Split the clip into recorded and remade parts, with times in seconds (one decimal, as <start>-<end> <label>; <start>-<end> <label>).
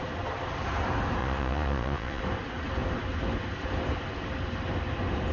0.0-1.2 recorded; 1.2-2.2 remade; 2.2-5.3 recorded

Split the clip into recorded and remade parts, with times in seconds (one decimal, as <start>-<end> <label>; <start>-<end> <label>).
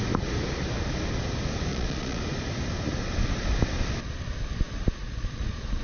0.0-1.7 recorded; 1.7-2.2 remade; 2.2-5.0 recorded; 5.0-5.8 remade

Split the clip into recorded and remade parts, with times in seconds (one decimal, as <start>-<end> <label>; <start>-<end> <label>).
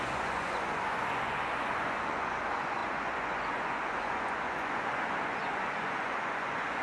0.0-6.8 remade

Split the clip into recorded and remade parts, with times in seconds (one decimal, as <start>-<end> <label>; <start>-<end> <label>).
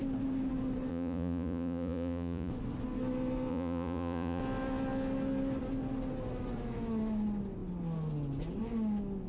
0.0-0.9 recorded; 0.9-2.5 remade; 2.5-3.5 recorded; 3.5-4.4 remade; 4.4-9.3 recorded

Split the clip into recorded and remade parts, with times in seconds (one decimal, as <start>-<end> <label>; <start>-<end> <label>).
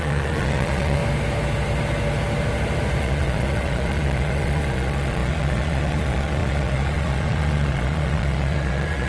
0.0-1.0 remade; 1.0-3.0 recorded; 3.0-9.1 remade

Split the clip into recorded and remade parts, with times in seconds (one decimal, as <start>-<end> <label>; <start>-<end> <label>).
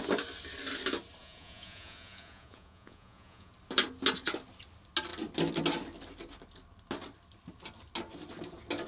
0.0-1.2 recorded; 1.2-3.5 remade; 3.5-8.9 recorded